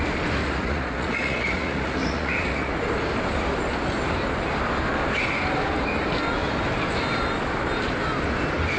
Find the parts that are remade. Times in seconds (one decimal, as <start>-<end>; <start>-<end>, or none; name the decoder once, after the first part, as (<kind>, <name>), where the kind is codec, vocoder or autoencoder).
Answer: 0.4-2.7 (vocoder, Vocos)